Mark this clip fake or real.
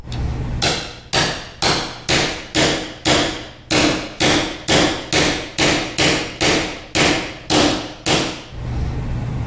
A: real